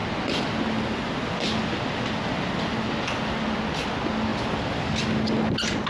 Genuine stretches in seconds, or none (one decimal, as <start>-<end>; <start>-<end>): 0.0-5.9